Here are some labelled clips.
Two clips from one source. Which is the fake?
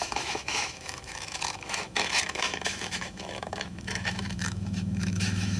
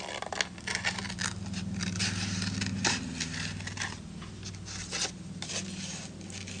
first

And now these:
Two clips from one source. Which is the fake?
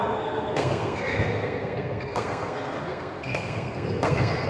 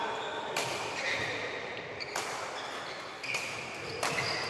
first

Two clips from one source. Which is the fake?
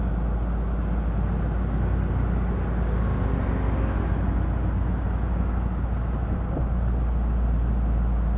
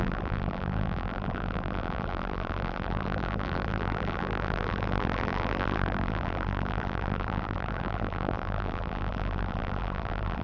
second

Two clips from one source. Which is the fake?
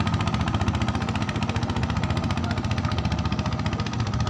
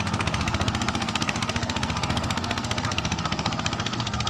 second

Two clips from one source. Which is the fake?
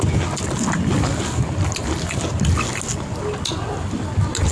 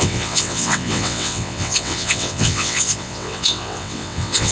second